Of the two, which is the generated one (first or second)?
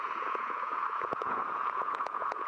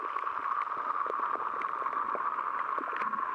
first